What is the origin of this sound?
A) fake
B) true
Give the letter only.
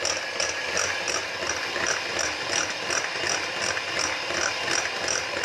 B